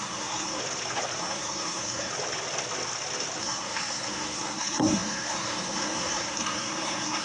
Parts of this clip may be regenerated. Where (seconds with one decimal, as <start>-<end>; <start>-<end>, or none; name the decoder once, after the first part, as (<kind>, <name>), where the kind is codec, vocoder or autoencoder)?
0.0-0.6 (codec, SNAC); 1.2-2.1; 3.4-7.2